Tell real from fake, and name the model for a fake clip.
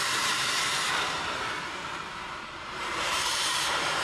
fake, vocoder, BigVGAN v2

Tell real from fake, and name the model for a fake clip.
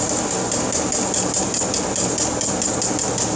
real